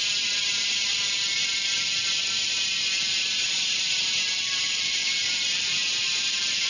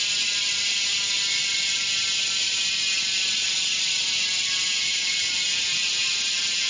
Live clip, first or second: second